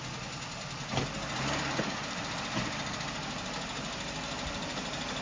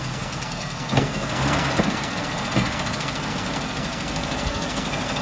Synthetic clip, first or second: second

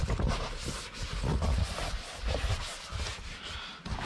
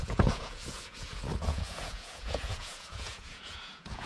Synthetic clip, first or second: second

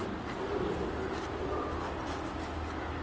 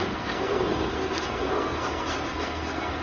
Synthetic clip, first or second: second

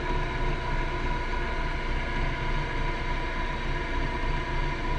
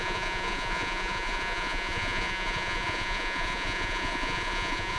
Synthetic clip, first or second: second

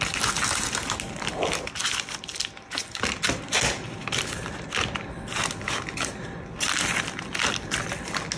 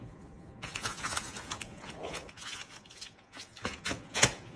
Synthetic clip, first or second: second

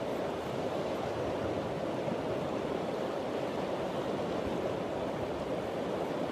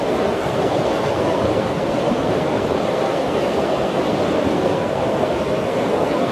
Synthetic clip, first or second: second